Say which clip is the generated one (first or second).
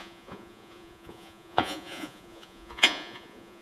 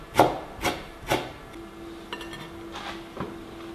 first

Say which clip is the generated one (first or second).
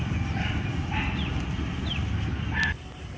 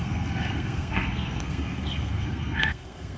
second